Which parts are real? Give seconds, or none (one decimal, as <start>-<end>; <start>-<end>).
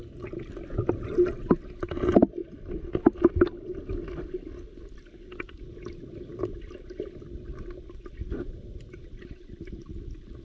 0.0-10.4